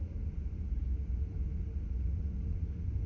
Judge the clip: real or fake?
real